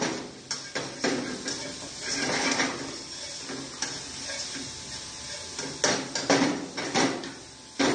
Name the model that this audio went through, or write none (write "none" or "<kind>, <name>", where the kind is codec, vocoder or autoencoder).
none